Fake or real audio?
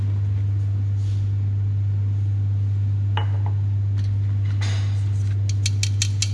real